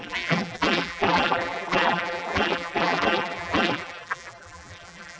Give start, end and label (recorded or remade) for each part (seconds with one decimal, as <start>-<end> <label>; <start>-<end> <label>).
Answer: 0.0-5.2 remade